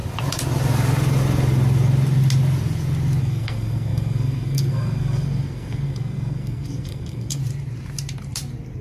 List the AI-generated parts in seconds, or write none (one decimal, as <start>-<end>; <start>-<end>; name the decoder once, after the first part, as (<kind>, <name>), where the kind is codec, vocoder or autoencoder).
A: 3.2-7.4 (codec, SNAC)